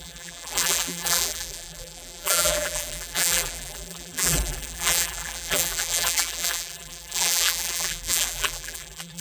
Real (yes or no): no